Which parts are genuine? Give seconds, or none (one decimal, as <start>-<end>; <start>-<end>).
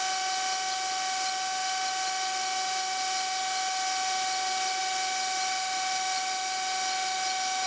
0.0-7.7